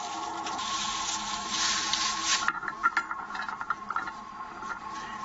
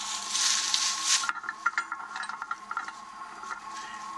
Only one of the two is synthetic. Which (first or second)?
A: first